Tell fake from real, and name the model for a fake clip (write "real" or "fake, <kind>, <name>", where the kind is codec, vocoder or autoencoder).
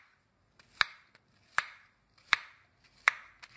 real